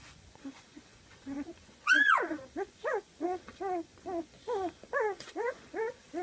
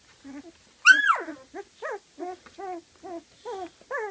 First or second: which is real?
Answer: second